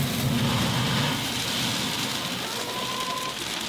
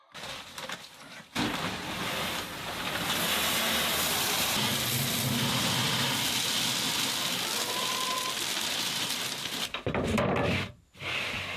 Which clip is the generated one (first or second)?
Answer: first